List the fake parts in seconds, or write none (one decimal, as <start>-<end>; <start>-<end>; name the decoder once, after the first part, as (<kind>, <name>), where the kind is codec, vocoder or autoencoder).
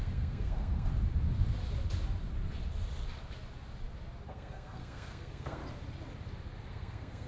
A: 0.0-0.9 (codec, SNAC); 4.3-5.6; 6.7-7.3